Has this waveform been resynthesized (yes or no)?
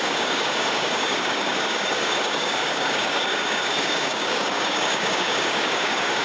yes